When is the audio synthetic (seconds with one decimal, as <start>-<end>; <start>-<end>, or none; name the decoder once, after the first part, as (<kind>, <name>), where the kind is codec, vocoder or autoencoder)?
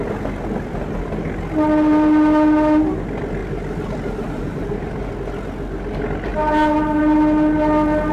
3.4-5.1 (vocoder, BigVGAN v2); 6.3-7.0